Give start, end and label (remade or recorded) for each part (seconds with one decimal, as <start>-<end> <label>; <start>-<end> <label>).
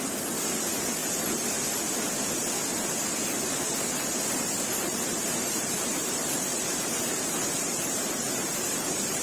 0.0-4.9 recorded; 4.9-9.2 remade